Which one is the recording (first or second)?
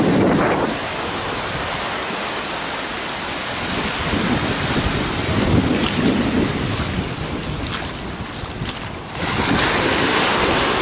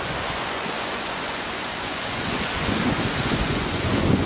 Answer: first